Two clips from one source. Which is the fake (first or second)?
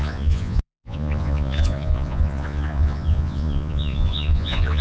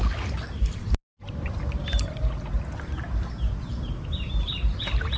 first